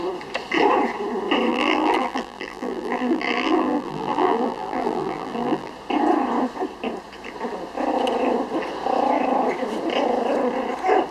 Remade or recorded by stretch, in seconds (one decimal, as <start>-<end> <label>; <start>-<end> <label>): 0.0-1.5 recorded; 1.5-5.7 remade; 5.7-11.1 recorded